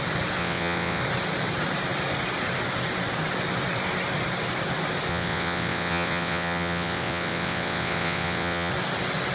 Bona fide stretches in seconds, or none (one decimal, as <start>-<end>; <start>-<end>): 0.0-0.4; 1.0-5.1; 8.7-9.3